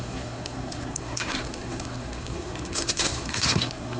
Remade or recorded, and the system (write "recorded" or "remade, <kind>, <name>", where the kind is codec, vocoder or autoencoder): remade, codec, SNAC